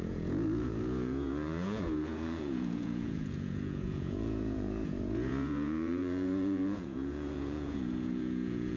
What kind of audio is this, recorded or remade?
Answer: remade